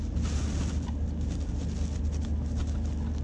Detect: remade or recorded recorded